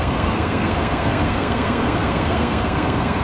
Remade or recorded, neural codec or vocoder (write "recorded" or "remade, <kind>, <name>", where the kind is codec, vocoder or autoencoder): remade, codec, SNAC